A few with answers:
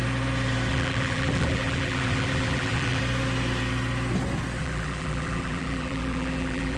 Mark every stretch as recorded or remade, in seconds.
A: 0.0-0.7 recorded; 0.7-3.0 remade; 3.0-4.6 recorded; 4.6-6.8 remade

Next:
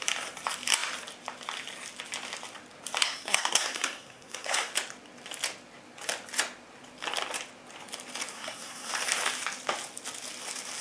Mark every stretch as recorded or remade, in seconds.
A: 0.0-3.0 recorded; 3.0-4.7 remade; 4.7-8.3 recorded; 8.3-8.9 remade; 8.9-10.8 recorded